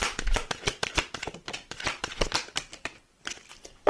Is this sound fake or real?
fake